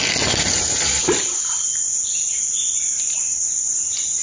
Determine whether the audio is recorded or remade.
recorded